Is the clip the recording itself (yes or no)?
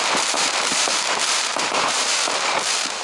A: no